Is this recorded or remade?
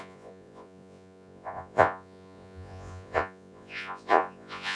remade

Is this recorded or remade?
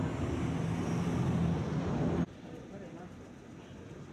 recorded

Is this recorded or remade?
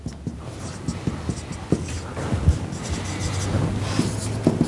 recorded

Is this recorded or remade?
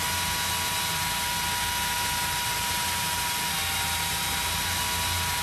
recorded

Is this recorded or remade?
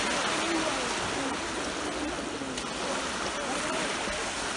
recorded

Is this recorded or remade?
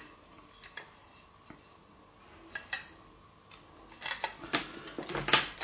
recorded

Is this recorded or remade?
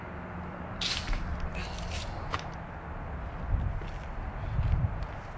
recorded